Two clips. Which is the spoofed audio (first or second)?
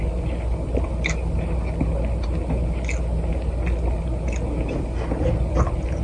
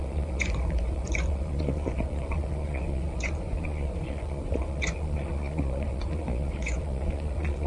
second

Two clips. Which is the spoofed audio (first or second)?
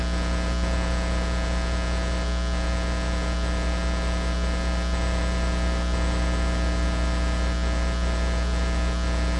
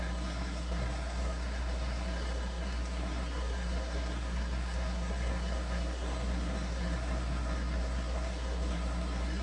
second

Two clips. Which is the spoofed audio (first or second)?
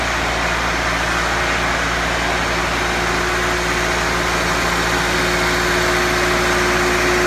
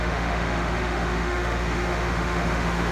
second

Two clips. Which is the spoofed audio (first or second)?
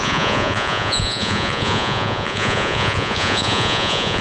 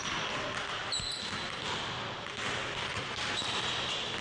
first